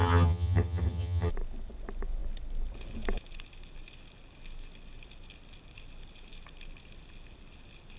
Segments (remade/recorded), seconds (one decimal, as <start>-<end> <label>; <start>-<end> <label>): 0.0-1.3 remade; 1.3-8.0 recorded